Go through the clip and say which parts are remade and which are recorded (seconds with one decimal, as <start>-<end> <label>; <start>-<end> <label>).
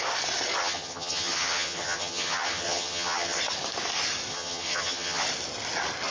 0.0-0.6 recorded; 0.6-3.4 remade; 3.4-4.3 recorded; 4.3-5.2 remade; 5.2-6.1 recorded